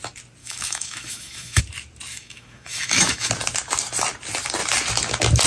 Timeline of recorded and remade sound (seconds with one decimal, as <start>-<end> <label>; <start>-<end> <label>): 0.0-0.4 recorded; 0.4-1.6 remade; 1.6-2.1 recorded; 2.1-3.3 remade; 3.3-5.5 recorded

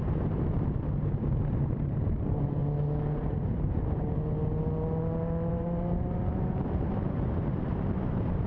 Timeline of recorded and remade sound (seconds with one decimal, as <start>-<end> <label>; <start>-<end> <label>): 0.0-2.6 remade; 2.6-3.1 recorded; 3.1-4.4 remade; 4.4-5.5 recorded; 5.5-8.5 remade

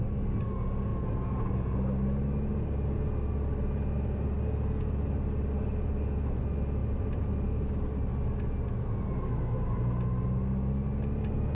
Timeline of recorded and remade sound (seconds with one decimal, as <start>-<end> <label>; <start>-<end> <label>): 0.0-11.5 recorded

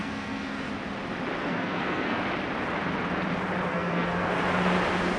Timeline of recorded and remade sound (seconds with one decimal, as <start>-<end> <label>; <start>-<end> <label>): 0.0-0.7 remade; 0.7-1.4 recorded; 1.4-2.2 remade; 2.2-3.7 recorded; 3.7-4.4 remade; 4.4-5.2 recorded

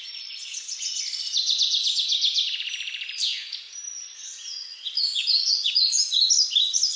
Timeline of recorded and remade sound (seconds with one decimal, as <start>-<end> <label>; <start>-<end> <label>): 0.0-0.4 recorded; 0.4-1.0 remade; 1.0-3.9 recorded; 3.9-6.3 remade; 6.3-7.0 recorded